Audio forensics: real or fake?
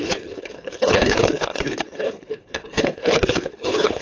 fake